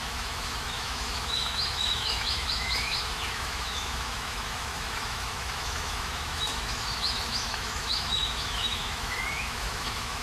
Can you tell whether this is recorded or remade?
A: remade